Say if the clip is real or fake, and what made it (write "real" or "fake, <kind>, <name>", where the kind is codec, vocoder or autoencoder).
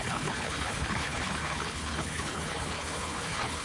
fake, codec, HILCodec